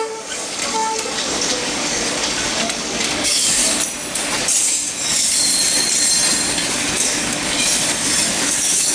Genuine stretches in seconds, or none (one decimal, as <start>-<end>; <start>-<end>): 3.6-4.6; 5.5-6.7; 7.7-8.3